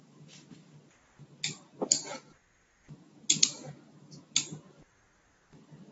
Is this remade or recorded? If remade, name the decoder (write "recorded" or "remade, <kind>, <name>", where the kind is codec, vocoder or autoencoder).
recorded